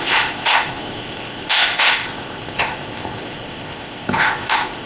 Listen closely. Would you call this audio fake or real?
fake